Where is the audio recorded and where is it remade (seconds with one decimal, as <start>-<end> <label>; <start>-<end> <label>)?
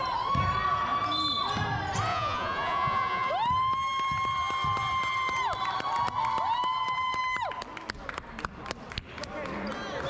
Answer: 0.0-2.1 recorded; 2.1-3.3 remade; 3.3-10.1 recorded